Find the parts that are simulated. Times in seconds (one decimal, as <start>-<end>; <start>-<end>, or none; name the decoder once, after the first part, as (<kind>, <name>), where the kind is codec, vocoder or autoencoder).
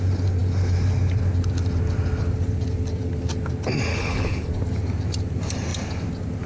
3.9-4.5 (codec, HILCodec)